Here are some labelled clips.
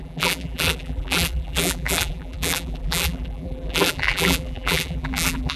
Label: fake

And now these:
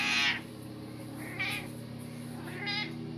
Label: real